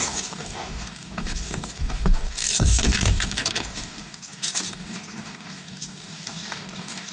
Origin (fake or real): fake